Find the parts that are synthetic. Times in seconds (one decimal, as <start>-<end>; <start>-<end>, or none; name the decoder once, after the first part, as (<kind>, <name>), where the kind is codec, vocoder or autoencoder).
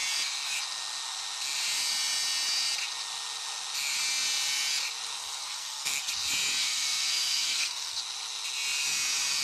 5.2-6.1 (codec, SNAC); 6.6-8.0